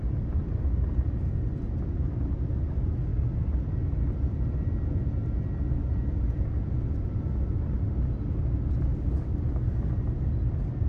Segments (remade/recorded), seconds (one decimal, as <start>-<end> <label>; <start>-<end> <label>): 0.0-8.9 recorded; 8.9-9.9 remade; 9.9-10.9 recorded